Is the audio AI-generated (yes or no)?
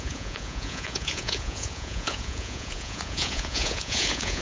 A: yes